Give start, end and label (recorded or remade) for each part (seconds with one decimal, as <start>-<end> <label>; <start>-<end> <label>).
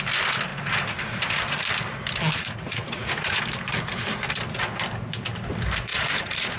0.0-2.7 recorded; 2.7-3.4 remade; 3.4-5.9 recorded; 5.9-6.6 remade